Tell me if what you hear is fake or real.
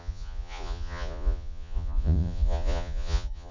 fake